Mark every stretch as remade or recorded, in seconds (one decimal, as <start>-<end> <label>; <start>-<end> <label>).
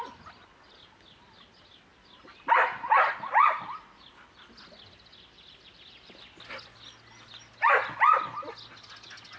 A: 0.0-9.4 recorded